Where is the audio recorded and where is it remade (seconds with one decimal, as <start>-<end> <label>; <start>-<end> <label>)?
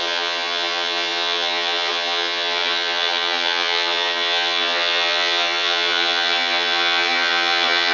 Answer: 0.0-7.9 remade